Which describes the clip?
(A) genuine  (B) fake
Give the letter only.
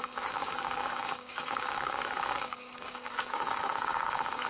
B